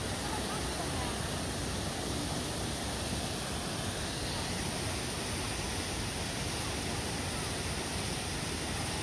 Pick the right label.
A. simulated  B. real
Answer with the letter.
B